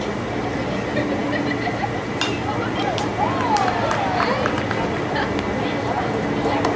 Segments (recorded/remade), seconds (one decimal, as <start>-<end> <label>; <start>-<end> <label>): 0.0-6.8 recorded